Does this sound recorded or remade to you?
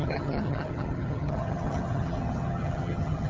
remade